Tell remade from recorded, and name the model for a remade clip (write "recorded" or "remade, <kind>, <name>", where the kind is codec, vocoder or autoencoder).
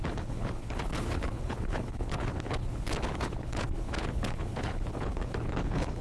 remade, codec, HILCodec